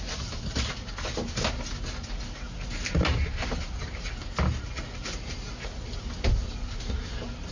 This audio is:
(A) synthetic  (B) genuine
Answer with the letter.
B